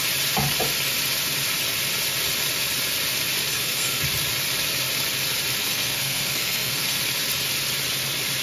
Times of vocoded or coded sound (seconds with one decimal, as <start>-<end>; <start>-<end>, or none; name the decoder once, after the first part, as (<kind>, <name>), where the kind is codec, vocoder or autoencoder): 3.5-4.0 (codec, SNAC); 5.6-7.0